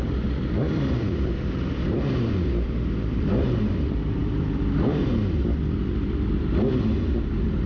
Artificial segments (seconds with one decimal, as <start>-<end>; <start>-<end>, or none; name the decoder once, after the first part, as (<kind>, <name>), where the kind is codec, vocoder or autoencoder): 0.0-7.7 (vocoder, BigVGAN v2)